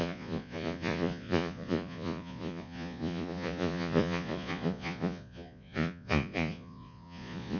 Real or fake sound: fake